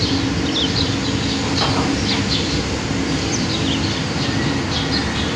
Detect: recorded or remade recorded